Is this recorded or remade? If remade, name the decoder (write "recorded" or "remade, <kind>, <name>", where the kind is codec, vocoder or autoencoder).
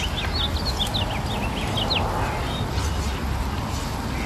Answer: recorded